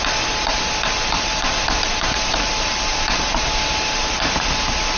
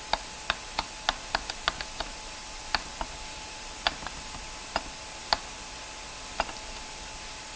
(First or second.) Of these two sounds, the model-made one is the first